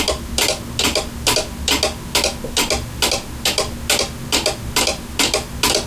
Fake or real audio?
real